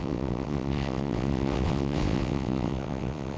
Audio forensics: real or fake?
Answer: fake